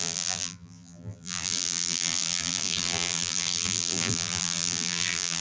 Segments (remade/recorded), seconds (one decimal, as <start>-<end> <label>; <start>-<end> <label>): 0.0-5.4 remade